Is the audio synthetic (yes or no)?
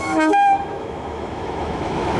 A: yes